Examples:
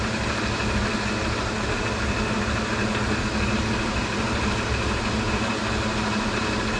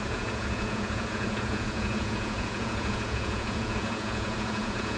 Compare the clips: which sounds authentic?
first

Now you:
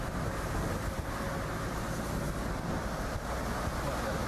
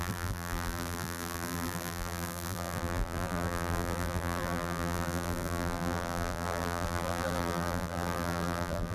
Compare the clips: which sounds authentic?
first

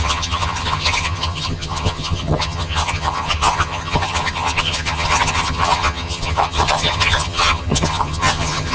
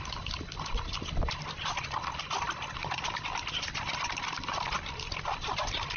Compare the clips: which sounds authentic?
second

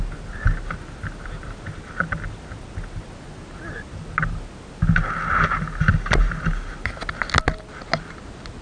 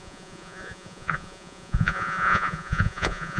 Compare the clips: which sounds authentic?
first